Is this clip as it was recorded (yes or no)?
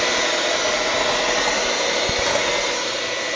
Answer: yes